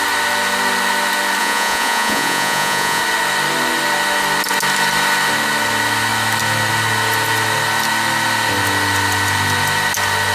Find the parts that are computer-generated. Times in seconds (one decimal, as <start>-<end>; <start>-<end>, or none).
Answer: 1.4-3.0